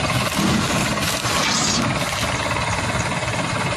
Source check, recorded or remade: recorded